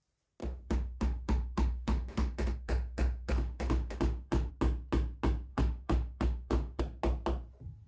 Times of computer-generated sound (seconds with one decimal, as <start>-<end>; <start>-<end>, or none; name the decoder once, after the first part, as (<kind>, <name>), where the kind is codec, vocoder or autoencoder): 0.4-4.5 (autoencoder, DAC-VAE); 5.5-6.8